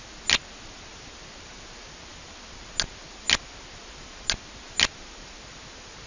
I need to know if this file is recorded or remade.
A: recorded